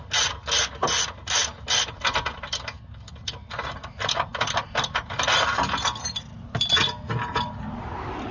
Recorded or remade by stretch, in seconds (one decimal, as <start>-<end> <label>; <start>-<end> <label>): 0.0-8.3 recorded

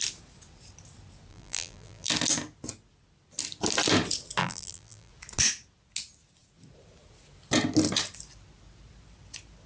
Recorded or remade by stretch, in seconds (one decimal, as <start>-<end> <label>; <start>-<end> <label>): 0.0-1.3 recorded; 1.3-2.1 remade; 2.1-4.4 recorded; 4.4-5.1 remade; 5.1-9.7 recorded

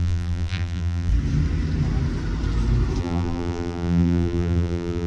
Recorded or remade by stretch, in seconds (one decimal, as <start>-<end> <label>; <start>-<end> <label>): 0.0-1.1 remade; 1.1-3.0 recorded; 3.0-5.1 remade

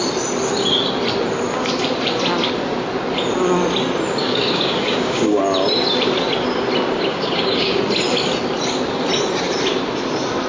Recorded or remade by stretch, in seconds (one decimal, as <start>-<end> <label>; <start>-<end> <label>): 0.0-4.2 recorded; 4.2-5.4 remade; 5.4-7.1 recorded; 7.1-7.8 remade; 7.8-10.5 recorded